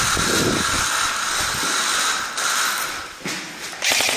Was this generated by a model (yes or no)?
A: no